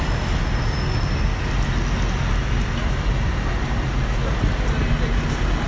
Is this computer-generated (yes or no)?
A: no